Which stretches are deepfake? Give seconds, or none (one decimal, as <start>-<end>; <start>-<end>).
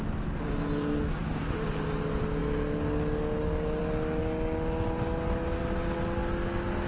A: 1.2-1.7